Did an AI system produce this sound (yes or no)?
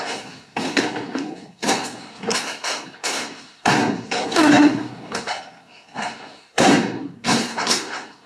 yes